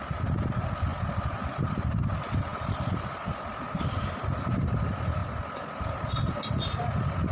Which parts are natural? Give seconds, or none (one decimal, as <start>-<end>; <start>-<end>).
0.0-7.3